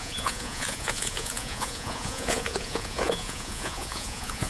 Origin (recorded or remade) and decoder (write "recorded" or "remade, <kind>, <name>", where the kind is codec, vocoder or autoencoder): remade, vocoder, Vocos